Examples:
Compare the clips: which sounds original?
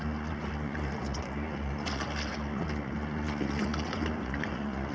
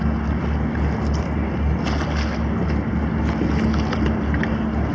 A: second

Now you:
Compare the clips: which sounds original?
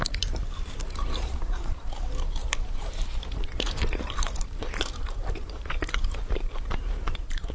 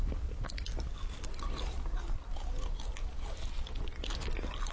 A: second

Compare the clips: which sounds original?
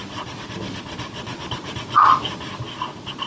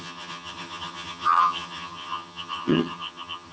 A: first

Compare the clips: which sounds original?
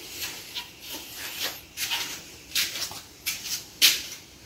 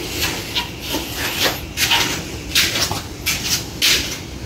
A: second